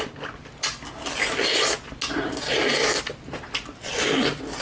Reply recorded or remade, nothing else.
recorded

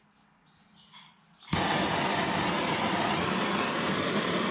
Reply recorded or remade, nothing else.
recorded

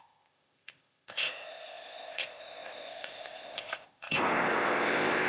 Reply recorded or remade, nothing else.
remade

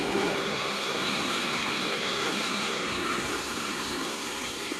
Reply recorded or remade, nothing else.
remade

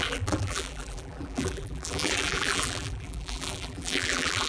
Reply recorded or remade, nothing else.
remade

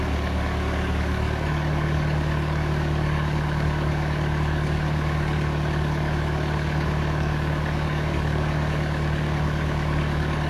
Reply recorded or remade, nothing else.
remade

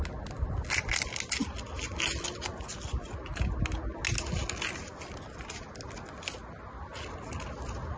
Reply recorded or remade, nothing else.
recorded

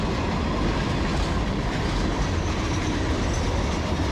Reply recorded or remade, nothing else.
recorded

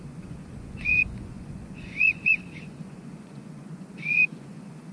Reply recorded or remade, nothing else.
remade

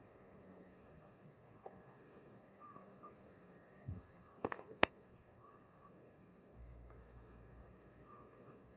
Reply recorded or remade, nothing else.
remade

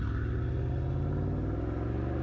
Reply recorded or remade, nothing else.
recorded